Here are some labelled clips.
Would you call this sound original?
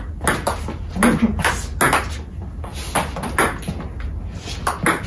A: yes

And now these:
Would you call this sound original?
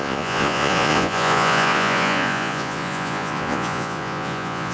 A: no